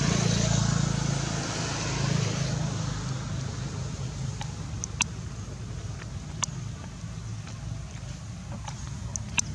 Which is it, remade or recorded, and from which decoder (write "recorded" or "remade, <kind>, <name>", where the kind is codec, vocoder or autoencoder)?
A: recorded